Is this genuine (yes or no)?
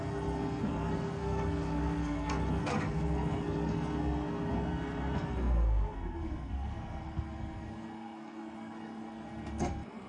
no